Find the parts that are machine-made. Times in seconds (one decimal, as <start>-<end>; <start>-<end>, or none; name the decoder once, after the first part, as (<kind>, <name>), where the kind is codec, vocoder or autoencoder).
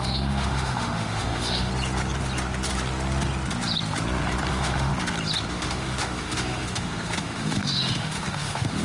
0.0-1.7 (autoencoder, DAC-VAE); 4.5-4.9; 5.5-8.8